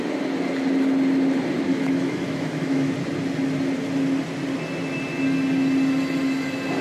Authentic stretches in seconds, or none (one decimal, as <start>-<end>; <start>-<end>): 0.0-1.7; 2.9-6.8

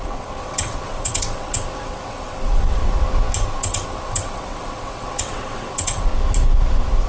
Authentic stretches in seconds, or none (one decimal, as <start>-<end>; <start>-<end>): 2.8-3.6; 6.1-7.1

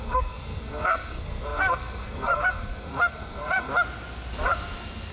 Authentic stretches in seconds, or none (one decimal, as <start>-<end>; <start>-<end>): 3.7-5.1

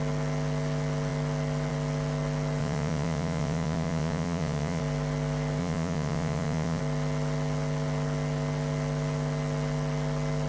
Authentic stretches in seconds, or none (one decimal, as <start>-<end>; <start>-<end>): 0.0-2.6; 4.8-5.6; 6.8-10.5

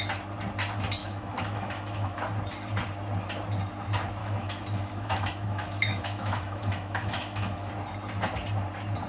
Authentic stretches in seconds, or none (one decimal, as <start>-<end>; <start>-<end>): 0.0-1.0; 2.2-4.2; 7.7-9.1

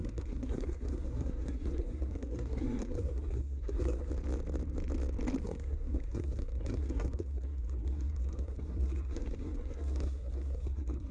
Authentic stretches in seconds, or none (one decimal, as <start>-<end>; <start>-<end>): 4.1-5.4

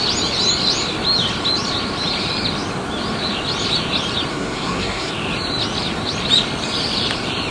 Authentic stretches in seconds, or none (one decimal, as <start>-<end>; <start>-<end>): 0.0-4.3; 5.1-7.5

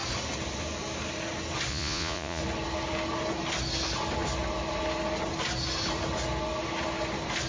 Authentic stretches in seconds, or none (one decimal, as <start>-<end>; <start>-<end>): 0.0-1.7; 2.4-7.5